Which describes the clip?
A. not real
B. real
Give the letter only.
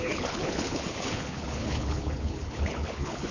A